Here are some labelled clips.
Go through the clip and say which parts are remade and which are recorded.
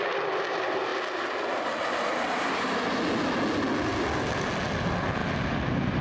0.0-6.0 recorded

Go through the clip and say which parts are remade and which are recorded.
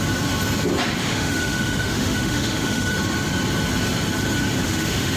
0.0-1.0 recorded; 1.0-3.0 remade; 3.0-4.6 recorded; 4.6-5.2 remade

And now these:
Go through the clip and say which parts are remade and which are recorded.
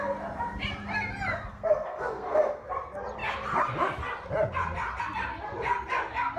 0.0-1.5 recorded; 1.5-2.7 remade; 2.7-6.4 recorded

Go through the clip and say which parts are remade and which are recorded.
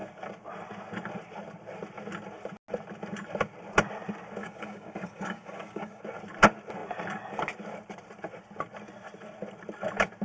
0.0-4.4 recorded; 4.4-6.0 remade; 6.0-10.2 recorded